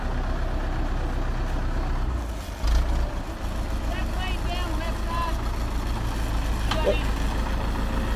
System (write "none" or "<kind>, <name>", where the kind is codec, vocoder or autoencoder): none